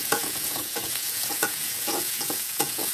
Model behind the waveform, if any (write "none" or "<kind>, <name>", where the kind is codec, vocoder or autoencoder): vocoder, Vocos